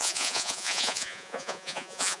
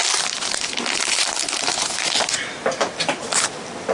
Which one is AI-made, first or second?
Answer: first